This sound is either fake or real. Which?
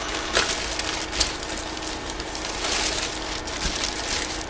real